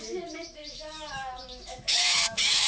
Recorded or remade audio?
remade